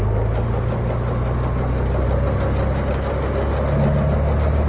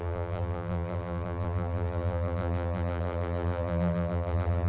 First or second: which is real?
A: first